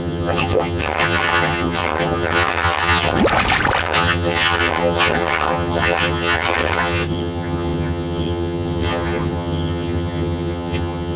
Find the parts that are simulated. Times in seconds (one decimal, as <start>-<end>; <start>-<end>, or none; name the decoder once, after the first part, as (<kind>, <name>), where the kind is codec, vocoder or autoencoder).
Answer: 0.0-3.2 (vocoder, HiFi-GAN); 3.8-11.2